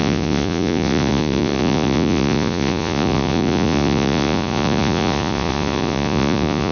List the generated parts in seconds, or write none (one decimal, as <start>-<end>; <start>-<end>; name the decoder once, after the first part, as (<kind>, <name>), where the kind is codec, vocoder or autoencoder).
0.0-6.7 (vocoder, Vocos)